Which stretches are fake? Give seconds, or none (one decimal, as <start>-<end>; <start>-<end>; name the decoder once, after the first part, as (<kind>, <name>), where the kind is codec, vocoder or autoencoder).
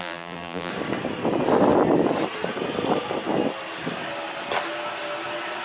0.0-0.7 (vocoder, BigVGAN v2)